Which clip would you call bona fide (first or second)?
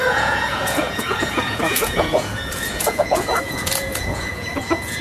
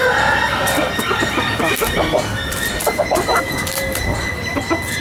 second